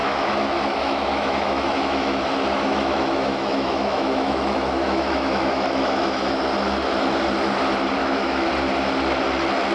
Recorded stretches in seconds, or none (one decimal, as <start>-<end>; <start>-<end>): 2.2-2.7; 6.4-8.0; 8.5-9.7